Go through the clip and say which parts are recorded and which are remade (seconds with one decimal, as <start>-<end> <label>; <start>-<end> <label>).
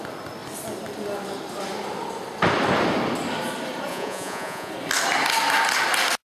0.0-3.9 recorded; 3.9-4.7 remade; 4.7-6.3 recorded